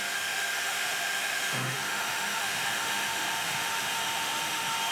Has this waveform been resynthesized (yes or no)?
yes